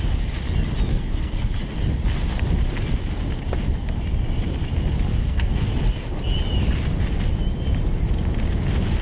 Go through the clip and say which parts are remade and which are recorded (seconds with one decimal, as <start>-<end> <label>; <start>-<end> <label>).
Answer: 0.0-0.9 recorded; 0.9-1.5 remade; 1.5-5.1 recorded; 5.1-5.7 remade; 5.7-9.0 recorded